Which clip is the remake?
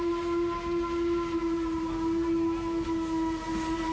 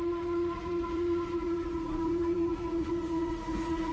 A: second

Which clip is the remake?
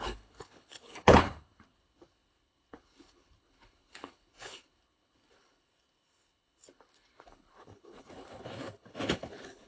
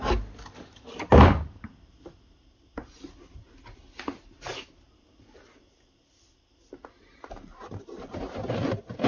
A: first